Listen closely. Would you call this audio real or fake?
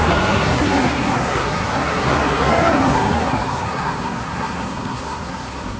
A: fake